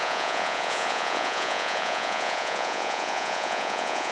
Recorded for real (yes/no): no